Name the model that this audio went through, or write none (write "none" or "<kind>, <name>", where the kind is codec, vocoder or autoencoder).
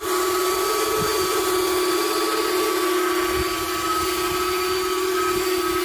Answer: none